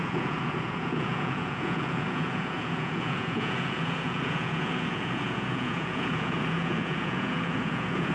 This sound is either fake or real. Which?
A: fake